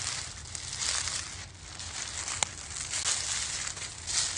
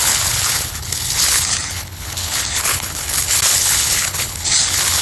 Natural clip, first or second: first